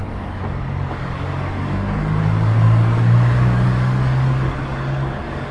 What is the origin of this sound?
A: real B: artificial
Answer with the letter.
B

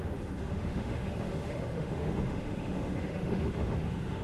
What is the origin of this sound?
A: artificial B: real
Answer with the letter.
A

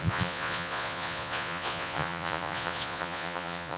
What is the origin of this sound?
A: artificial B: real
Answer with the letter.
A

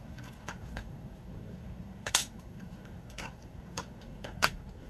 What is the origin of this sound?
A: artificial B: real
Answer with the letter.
A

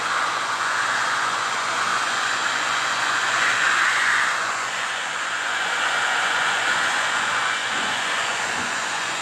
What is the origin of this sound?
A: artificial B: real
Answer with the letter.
A